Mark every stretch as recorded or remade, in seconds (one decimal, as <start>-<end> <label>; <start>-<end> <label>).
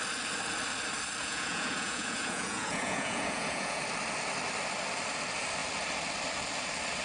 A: 0.0-1.2 recorded; 1.2-3.8 remade; 3.8-7.0 recorded